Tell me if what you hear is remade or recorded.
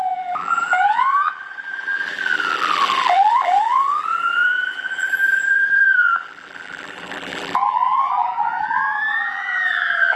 remade